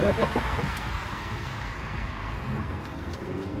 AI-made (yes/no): yes